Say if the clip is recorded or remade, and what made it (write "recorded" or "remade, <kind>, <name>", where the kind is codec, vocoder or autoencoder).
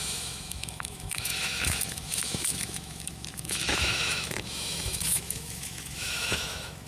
remade, autoencoder, DAC-VAE